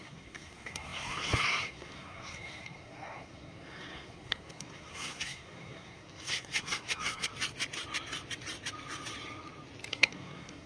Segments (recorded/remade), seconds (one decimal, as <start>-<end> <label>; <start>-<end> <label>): 0.0-7.3 remade; 7.3-9.9 recorded; 9.9-10.7 remade